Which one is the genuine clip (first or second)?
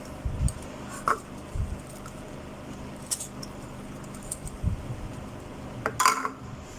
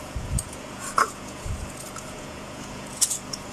first